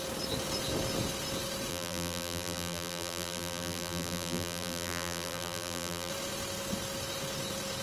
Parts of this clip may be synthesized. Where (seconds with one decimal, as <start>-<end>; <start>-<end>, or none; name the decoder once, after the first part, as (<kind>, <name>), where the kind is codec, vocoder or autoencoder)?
1.7-6.1 (vocoder, BigVGAN v2)